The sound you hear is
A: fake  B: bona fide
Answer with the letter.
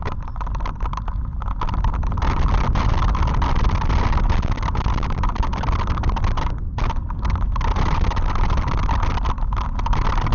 B